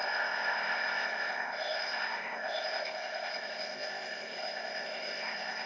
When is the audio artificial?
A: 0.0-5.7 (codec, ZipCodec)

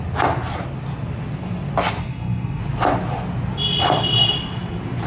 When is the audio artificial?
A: 2.0-2.6 (codec, SNAC)

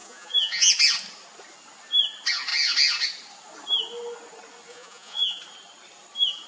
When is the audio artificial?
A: 0.0-0.7 (vocoder, Vocos); 4.7-5.4